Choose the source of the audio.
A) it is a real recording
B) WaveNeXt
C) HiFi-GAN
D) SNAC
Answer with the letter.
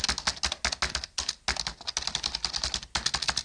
A